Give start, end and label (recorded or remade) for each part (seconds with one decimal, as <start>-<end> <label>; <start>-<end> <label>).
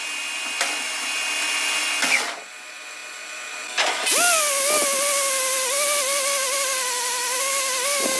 0.0-8.2 recorded